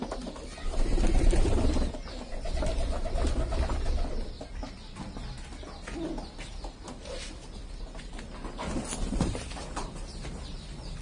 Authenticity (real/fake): real